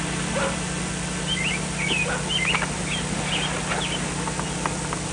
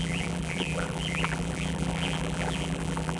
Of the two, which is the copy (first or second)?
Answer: second